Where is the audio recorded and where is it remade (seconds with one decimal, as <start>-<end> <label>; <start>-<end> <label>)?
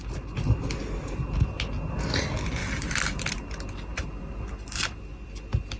0.0-2.6 recorded; 2.6-3.3 remade; 3.3-3.9 recorded; 3.9-5.0 remade; 5.0-5.8 recorded